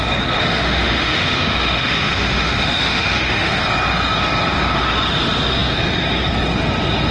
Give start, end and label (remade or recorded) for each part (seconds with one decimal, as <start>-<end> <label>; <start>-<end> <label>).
0.0-0.4 recorded; 0.4-3.6 remade; 3.6-7.1 recorded